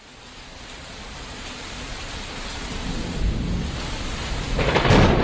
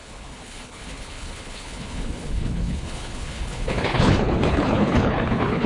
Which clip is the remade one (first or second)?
second